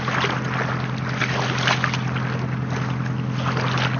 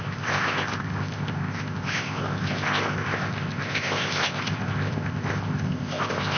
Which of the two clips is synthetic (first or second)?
second